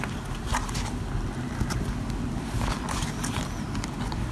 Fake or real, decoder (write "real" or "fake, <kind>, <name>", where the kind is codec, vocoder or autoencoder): real